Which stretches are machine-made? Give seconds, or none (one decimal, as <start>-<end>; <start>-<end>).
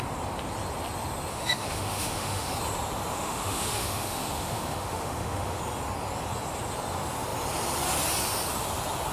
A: 1.3-2.5; 3.1-5.6